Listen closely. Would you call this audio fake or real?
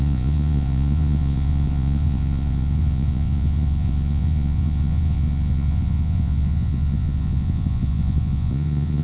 fake